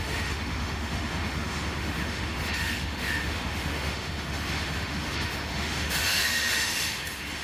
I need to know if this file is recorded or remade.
remade